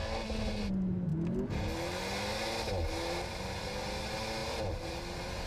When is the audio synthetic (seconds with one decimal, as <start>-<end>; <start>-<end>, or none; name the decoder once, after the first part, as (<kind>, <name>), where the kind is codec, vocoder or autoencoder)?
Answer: 4.4-5.5 (vocoder, BigVGAN v2)